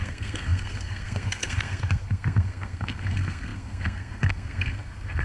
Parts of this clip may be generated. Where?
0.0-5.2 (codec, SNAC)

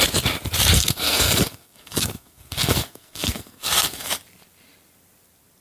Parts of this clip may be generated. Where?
0.7-4.1 (codec, SNAC)

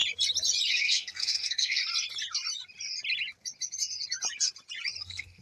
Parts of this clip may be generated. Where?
0.7-1.8 (codec, SNAC); 5.0-5.4

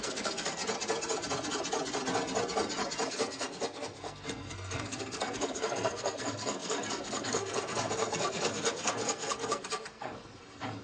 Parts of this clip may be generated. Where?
0.0-0.6 (codec, SNAC); 3.1-10.8

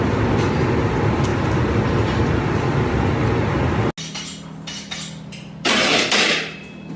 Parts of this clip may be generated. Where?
none

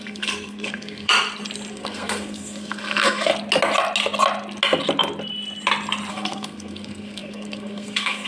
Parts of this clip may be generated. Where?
0.0-1.1 (codec, SNAC); 1.7-3.3; 6.1-8.3

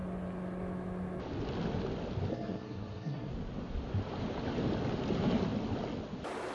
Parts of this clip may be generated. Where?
2.3-3.3 (codec, SNAC)

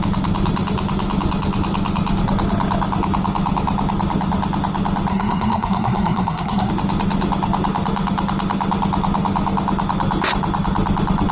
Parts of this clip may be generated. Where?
5.1-6.7 (codec, SNAC)